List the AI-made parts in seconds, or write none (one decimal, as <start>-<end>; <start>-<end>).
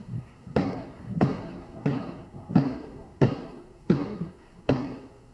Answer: 0.0-5.3